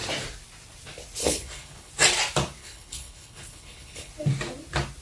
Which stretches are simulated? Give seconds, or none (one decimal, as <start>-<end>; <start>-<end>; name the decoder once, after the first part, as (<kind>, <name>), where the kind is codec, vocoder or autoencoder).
1.2-1.9 (codec, HILCodec); 2.6-4.1